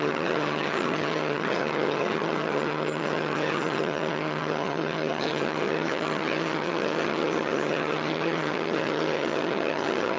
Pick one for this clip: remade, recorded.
remade